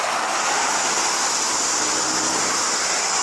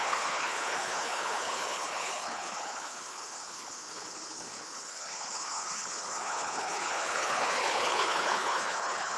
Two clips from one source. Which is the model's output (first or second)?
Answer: second